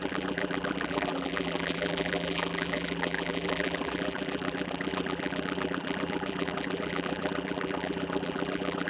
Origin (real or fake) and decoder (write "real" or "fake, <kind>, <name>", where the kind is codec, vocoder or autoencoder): fake, vocoder, BigVGAN v2